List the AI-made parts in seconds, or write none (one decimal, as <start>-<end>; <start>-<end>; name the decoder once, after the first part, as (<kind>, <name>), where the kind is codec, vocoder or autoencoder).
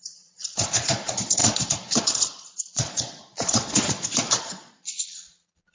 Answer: 0.0-5.7 (vocoder, Vocos)